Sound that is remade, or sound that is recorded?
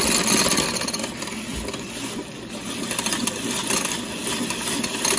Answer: recorded